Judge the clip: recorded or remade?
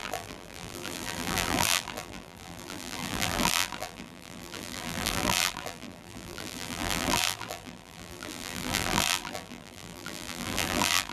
remade